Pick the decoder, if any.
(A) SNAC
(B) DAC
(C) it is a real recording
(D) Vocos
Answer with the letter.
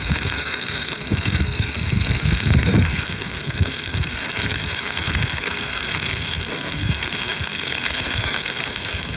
A